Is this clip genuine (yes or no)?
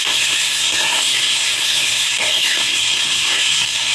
no